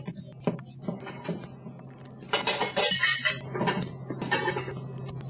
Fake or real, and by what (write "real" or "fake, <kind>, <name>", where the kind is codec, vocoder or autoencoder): real